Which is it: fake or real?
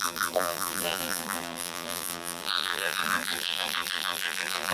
fake